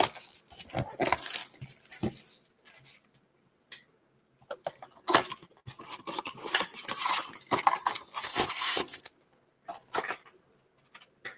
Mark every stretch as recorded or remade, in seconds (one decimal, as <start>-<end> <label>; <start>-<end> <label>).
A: 0.0-8.3 recorded; 8.3-9.0 remade; 9.0-11.4 recorded